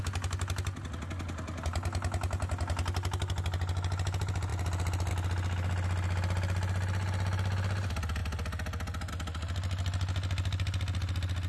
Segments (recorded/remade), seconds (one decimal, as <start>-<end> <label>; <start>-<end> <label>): 0.0-11.5 recorded

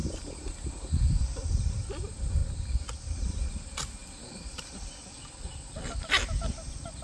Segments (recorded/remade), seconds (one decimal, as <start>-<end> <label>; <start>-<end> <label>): 0.0-4.0 recorded; 4.0-6.2 remade; 6.2-7.0 recorded

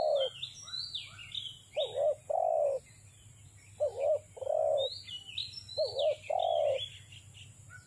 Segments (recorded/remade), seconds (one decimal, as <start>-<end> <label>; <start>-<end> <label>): 0.0-7.9 recorded